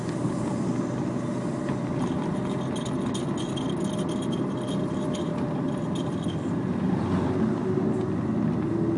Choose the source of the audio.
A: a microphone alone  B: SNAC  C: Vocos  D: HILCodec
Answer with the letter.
A